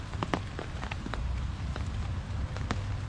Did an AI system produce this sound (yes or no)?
no